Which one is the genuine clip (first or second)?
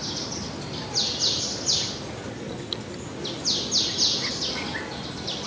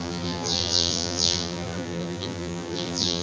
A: first